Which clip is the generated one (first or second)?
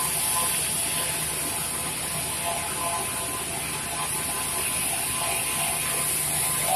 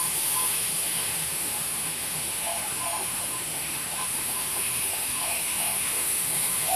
second